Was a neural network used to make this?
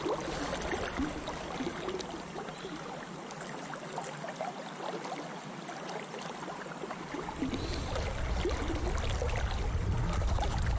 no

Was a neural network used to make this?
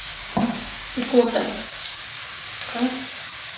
yes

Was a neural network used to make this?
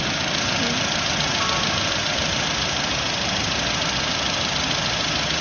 no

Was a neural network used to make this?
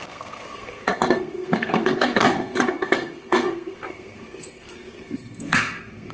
yes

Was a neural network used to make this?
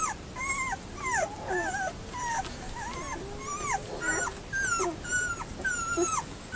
no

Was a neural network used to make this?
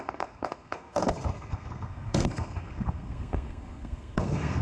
yes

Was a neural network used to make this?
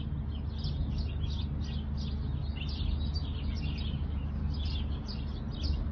no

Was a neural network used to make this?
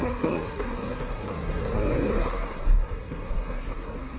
yes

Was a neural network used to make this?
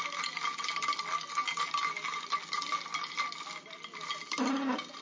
no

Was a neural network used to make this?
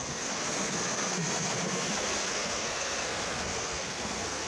yes